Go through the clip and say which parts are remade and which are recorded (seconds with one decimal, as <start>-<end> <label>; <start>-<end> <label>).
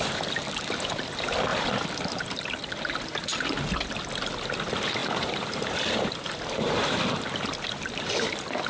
0.0-8.7 recorded